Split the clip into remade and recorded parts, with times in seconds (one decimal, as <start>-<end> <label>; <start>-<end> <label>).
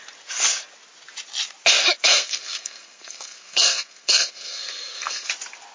0.0-2.1 recorded; 2.1-5.3 remade; 5.3-5.7 recorded